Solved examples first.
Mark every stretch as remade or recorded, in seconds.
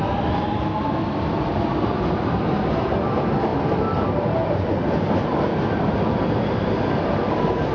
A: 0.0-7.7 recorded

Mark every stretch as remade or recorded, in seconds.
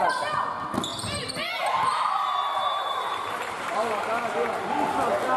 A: 0.0-0.9 recorded; 0.9-4.0 remade; 4.0-5.4 recorded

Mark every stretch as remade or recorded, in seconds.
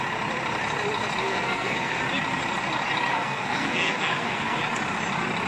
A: 0.0-1.2 recorded; 1.2-2.0 remade; 2.0-3.1 recorded; 3.1-4.6 remade; 4.6-5.5 recorded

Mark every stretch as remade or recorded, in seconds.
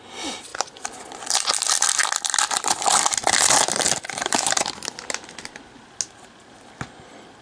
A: 0.0-7.4 recorded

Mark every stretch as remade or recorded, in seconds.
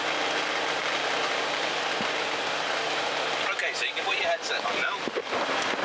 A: 0.0-0.8 recorded; 0.8-1.7 remade; 1.7-5.8 recorded